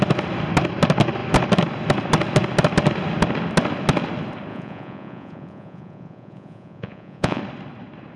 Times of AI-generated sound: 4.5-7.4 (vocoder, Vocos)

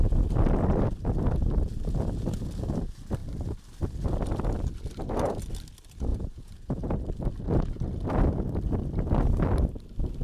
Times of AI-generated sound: 6.1-7.0 (vocoder, Vocos)

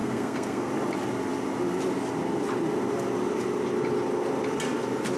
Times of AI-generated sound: 0.0-0.7 (codec, SNAC)

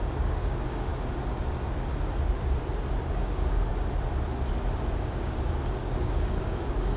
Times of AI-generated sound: 0.0-0.9 (codec, DAC); 3.0-3.7; 5.0-7.0

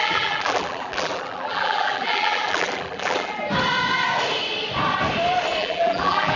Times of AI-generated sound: 0.0-3.4 (vocoder, BigVGAN v2); 5.6-6.4

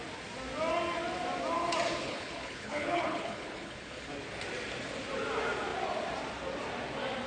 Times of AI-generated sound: 2.0-4.1 (codec, HILCodec)